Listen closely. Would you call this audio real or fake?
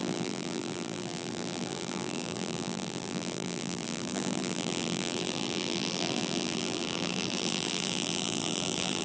fake